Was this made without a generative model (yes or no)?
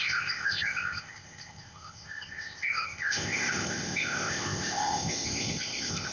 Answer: no